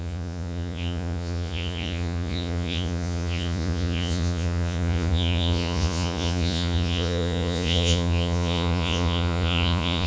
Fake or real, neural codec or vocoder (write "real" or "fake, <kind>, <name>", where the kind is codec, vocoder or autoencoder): fake, vocoder, Vocos